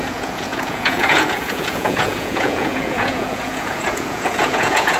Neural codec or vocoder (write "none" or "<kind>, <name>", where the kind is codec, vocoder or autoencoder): vocoder, Vocos